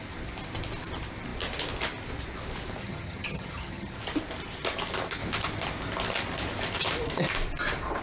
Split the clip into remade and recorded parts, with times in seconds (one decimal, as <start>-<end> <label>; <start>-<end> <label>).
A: 0.0-2.8 recorded; 2.8-4.0 remade; 4.0-8.0 recorded